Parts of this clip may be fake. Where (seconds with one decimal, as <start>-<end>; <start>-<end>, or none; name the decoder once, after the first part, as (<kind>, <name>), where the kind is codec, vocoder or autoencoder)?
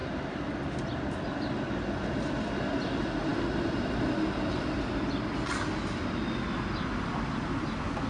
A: none